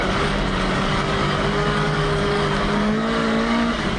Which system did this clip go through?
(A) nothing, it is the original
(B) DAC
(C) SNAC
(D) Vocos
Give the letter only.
B